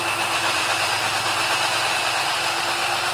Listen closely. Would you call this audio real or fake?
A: real